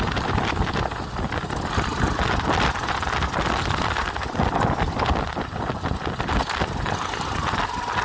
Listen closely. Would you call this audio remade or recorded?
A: remade